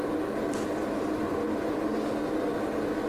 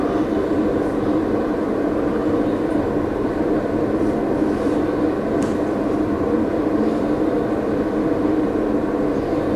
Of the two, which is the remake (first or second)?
second